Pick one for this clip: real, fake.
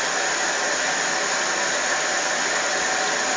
real